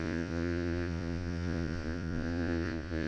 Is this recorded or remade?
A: remade